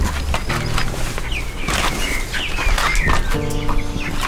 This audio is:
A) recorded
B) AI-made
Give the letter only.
A